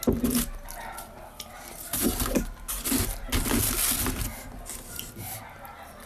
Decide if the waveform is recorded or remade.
recorded